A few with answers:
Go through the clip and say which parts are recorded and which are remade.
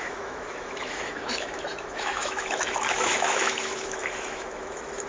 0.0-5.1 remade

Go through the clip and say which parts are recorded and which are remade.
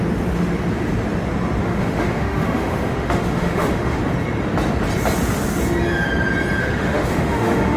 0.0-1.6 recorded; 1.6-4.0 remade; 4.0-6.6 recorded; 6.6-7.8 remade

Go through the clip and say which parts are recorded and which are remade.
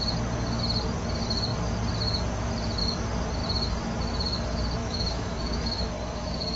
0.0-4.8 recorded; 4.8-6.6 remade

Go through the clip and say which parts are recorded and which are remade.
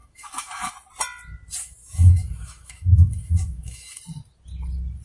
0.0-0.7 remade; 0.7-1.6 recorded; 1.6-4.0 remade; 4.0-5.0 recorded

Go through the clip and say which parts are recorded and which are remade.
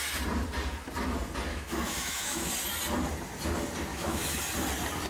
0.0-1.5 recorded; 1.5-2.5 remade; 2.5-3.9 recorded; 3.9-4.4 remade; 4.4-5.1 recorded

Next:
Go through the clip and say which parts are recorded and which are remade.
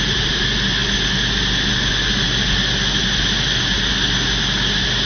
0.0-5.0 recorded